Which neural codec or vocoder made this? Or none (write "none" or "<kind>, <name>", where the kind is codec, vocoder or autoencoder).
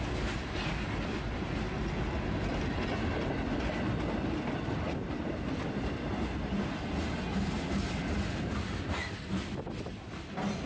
none